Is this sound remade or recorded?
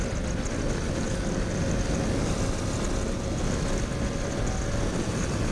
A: recorded